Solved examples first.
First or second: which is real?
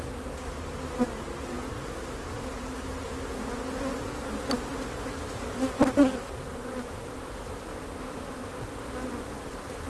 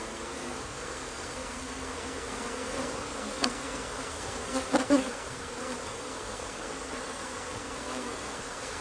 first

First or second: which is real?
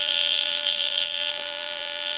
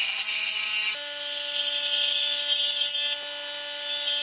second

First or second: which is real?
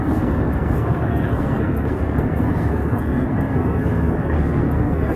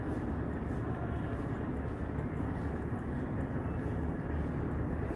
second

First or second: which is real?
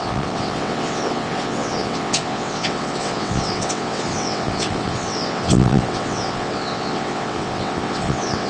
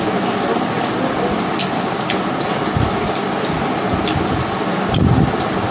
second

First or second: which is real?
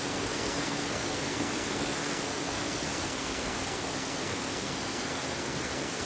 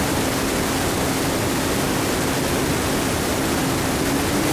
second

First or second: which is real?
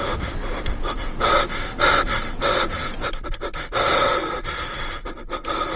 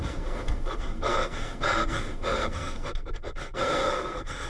first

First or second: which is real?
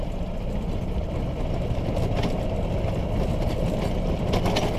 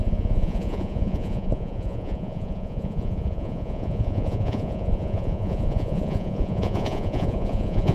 first